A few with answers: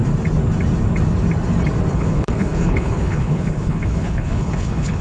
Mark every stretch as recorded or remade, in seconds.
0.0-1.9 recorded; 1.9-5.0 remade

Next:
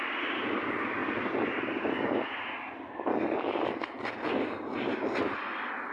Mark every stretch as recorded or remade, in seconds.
0.0-5.9 recorded

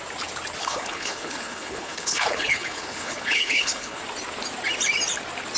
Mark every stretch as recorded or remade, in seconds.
0.0-0.6 recorded; 0.6-4.0 remade; 4.0-5.6 recorded